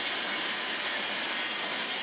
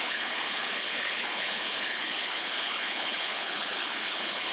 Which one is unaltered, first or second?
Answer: first